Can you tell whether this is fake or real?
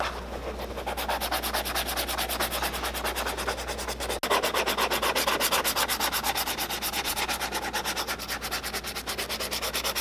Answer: real